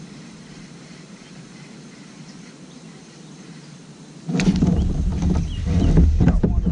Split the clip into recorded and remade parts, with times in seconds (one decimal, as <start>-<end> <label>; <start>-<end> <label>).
0.0-5.1 remade; 5.1-6.2 recorded; 6.2-6.7 remade